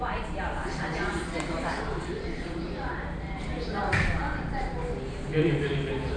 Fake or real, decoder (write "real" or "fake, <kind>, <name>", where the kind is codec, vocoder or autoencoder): fake, vocoder, BigVGAN v2